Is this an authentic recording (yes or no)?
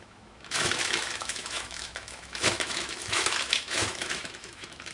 no